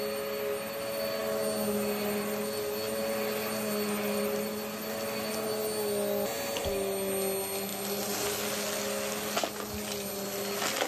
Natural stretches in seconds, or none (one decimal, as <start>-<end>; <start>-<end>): 0.0-10.9